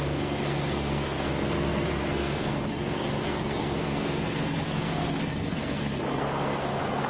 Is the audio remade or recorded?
remade